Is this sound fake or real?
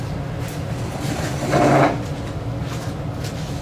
real